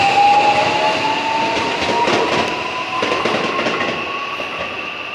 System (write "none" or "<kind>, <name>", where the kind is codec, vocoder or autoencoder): none